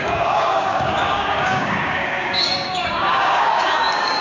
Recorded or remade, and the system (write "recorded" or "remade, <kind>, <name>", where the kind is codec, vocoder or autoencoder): remade, codec, DAC